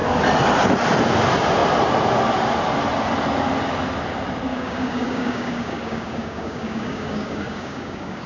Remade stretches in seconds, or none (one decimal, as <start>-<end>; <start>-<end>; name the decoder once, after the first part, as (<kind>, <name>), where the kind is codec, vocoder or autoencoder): 4.5-8.3 (codec, DAC)